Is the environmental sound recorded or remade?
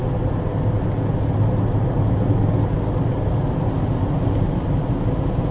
recorded